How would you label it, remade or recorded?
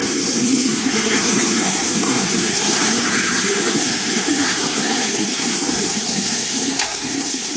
remade